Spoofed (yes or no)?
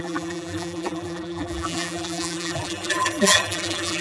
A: yes